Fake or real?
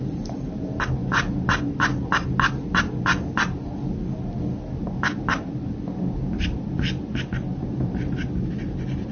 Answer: real